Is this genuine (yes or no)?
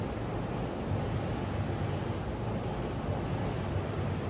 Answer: yes